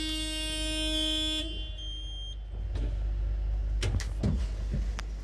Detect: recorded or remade recorded